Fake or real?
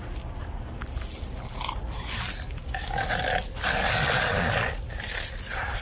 real